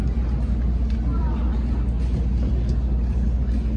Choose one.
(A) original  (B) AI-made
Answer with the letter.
A